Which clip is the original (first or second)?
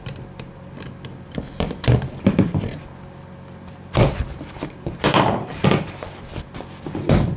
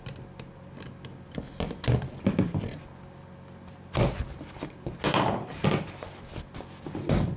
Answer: second